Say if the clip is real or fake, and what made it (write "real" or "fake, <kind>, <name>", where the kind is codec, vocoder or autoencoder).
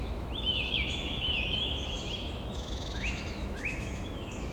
fake, autoencoder, DAC-VAE